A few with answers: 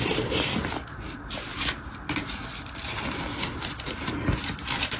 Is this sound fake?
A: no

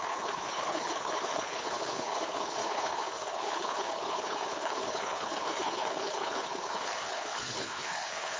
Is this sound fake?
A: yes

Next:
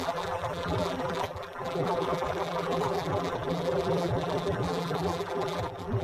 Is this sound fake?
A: yes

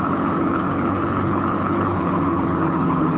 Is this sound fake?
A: yes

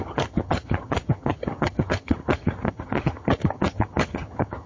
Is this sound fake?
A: yes